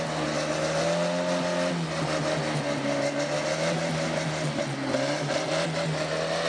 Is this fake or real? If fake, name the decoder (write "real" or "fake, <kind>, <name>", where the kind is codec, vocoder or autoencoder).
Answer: real